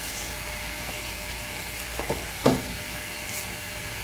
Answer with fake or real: fake